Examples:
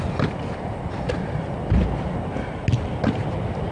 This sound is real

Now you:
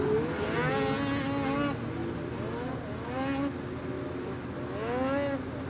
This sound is real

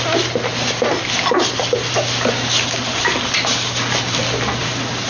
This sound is real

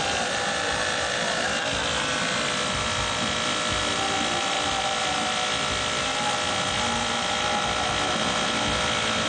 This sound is real